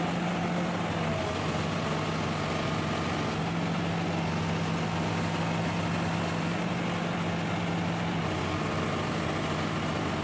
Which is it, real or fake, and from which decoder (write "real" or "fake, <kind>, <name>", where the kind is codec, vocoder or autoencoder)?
real